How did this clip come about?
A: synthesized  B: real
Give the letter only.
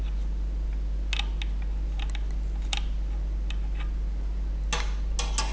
B